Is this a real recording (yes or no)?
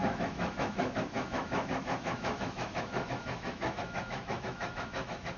no